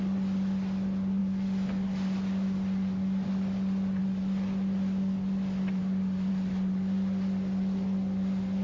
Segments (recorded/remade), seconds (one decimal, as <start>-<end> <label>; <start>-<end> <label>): 0.0-8.6 recorded